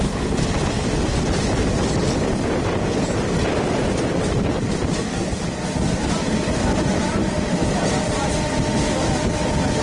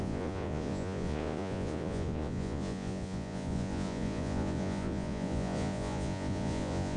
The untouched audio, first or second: first